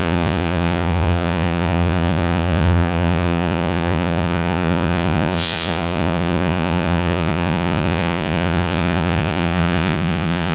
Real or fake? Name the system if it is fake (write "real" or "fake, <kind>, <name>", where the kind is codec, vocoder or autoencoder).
fake, vocoder, Vocos